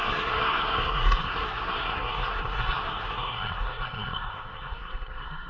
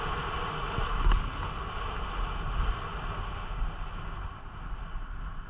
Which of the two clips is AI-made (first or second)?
first